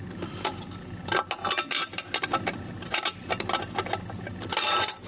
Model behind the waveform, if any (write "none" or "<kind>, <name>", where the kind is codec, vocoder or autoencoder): none